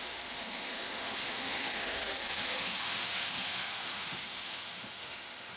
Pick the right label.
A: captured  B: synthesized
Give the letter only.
B